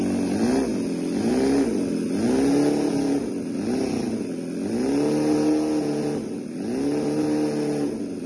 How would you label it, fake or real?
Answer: real